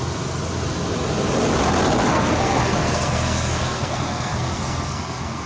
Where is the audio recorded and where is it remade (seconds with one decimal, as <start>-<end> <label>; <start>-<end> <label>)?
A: 0.0-2.1 recorded; 2.1-5.5 remade